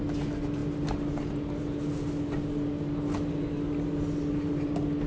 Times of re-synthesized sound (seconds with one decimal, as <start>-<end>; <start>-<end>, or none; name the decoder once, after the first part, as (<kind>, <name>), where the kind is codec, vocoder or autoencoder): none